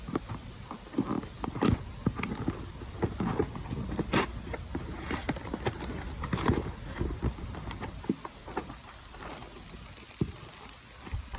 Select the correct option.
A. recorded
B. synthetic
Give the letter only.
A